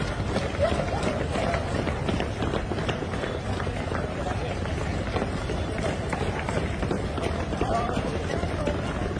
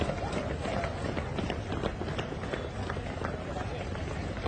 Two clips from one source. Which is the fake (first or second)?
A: first